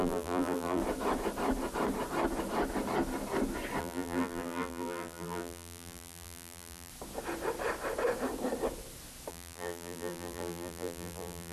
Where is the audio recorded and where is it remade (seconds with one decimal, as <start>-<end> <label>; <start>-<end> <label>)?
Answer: 0.0-0.8 remade; 0.8-3.8 recorded; 3.8-6.9 remade; 6.9-9.3 recorded; 9.3-11.5 remade

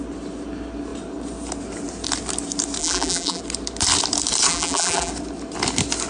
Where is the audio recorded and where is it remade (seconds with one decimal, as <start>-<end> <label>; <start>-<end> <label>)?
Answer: 0.0-2.8 recorded; 2.8-3.4 remade; 3.4-4.5 recorded; 4.5-5.1 remade; 5.1-6.1 recorded

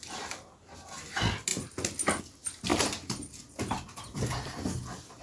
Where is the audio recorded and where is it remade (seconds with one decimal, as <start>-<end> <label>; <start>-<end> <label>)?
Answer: 0.0-5.2 recorded

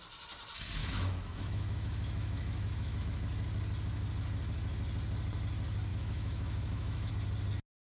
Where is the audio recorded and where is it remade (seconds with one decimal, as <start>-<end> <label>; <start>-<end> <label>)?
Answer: 0.0-0.8 recorded; 0.8-3.0 remade; 3.0-5.9 recorded; 5.9-7.1 remade; 7.1-7.9 recorded

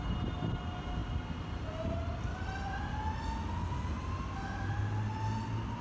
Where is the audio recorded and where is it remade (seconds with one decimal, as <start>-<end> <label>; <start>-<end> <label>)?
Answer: 0.0-5.8 recorded

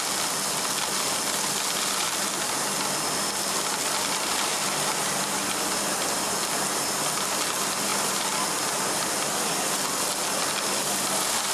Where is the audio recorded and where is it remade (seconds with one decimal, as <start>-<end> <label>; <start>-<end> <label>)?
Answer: 0.0-11.5 recorded